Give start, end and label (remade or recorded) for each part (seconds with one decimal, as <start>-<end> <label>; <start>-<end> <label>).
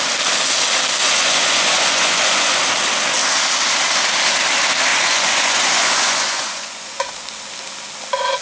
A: 0.0-1.0 recorded; 1.0-2.6 remade; 2.6-4.9 recorded; 4.9-7.1 remade; 7.1-8.4 recorded